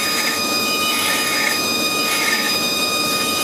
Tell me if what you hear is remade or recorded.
remade